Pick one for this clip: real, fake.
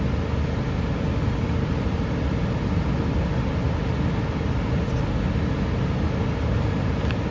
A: real